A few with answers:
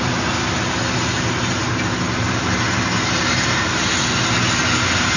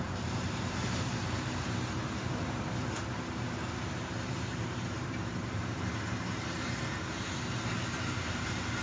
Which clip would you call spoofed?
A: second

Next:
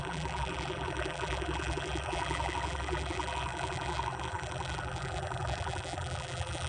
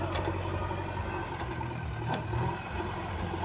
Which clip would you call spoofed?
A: first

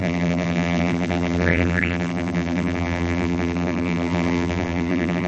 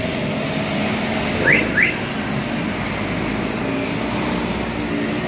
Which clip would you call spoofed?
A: first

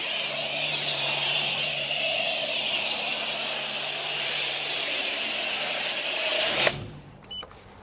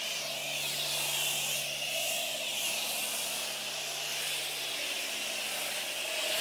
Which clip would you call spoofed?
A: first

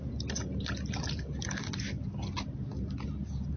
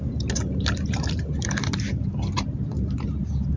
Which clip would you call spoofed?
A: second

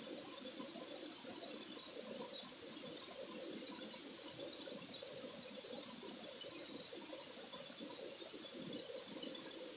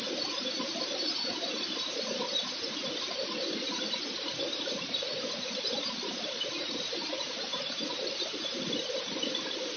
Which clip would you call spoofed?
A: second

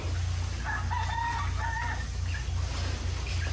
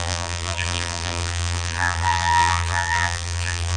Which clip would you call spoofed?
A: second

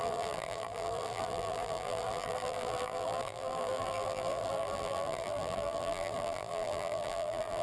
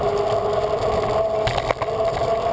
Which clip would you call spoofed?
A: first